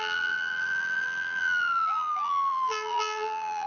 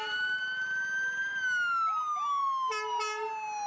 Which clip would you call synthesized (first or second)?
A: first